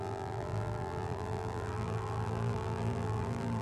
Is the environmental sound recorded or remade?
remade